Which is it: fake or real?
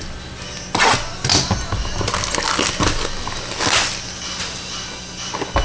real